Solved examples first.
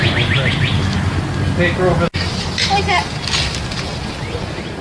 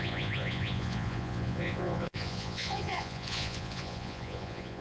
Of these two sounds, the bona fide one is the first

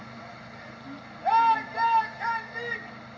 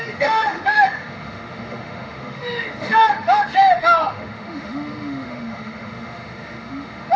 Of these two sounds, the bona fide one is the first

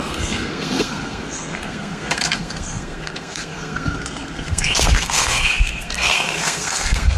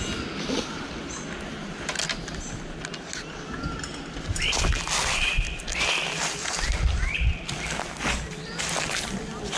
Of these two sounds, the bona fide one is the second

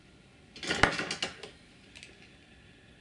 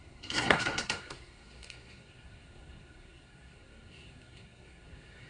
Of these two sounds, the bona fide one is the first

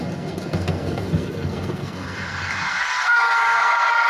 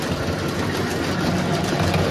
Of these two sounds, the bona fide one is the second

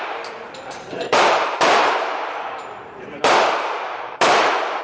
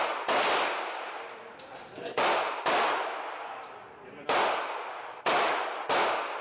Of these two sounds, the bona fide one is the second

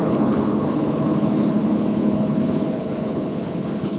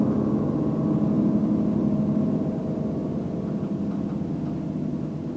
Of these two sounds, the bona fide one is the second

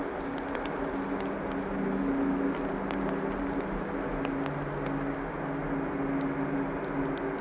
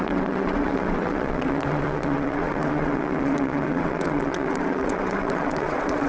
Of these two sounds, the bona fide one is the first